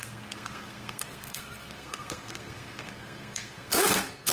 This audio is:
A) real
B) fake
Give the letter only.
B